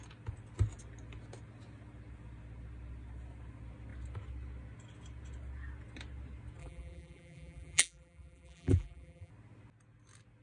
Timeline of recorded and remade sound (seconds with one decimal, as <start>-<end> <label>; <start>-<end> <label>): 0.0-6.6 recorded; 6.6-9.3 remade; 9.3-10.4 recorded